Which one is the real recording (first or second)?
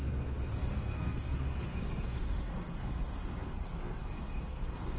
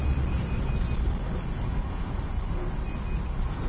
second